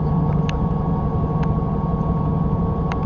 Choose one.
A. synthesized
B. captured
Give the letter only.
B